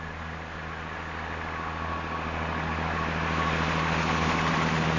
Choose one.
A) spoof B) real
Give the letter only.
B